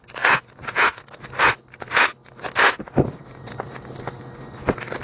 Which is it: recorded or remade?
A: recorded